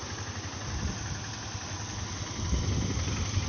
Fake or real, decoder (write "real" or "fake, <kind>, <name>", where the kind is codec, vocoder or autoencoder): real